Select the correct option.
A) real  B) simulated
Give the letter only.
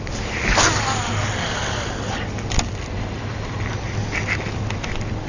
A